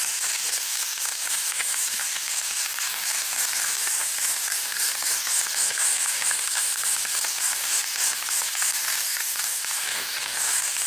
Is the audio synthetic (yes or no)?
yes